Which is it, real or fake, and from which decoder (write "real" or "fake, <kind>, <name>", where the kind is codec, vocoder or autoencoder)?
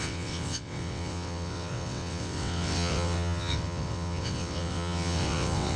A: fake, vocoder, WaveNeXt